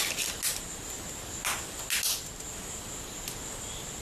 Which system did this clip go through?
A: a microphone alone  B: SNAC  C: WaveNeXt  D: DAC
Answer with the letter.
A